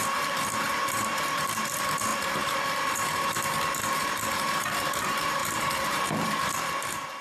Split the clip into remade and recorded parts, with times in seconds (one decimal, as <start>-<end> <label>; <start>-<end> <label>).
0.0-7.2 remade